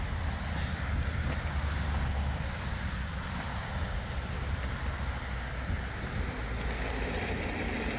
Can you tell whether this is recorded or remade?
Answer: recorded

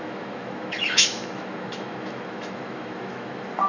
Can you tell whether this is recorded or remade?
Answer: remade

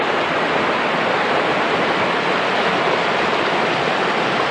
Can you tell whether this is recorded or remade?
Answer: recorded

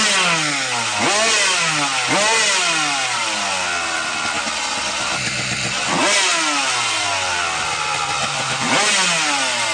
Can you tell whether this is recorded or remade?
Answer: recorded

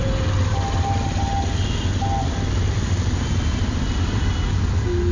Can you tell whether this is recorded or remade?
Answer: recorded